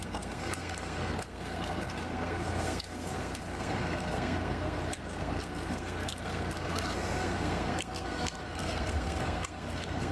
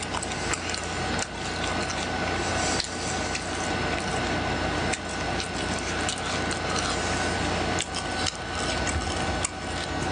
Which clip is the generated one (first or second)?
first